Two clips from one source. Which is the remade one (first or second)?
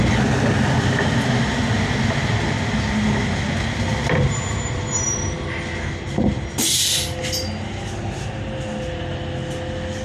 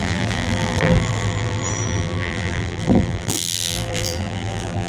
second